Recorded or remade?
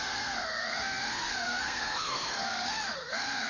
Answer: remade